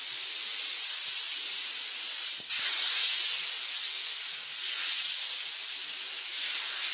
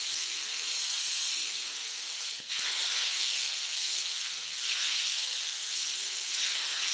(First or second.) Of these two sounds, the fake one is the second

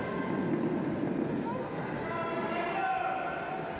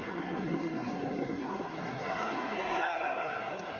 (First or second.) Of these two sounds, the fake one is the second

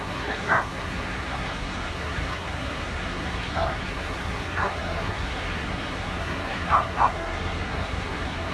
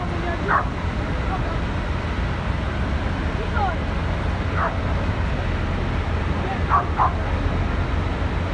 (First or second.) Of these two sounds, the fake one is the first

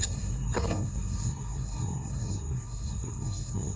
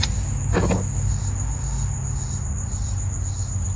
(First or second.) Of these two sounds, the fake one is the first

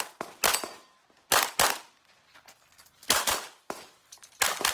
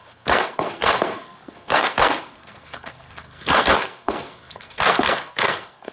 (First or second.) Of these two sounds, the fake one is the second